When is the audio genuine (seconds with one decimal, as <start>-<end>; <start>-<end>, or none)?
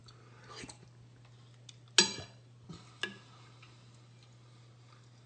0.0-5.3